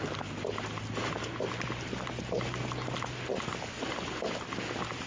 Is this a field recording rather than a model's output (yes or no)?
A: yes